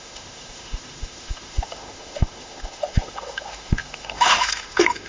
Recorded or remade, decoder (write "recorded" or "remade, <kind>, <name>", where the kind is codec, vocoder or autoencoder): remade, autoencoder, DAC-VAE